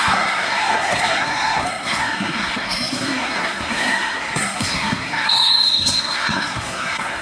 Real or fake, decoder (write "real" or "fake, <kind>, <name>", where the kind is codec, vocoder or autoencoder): fake, codec, SNAC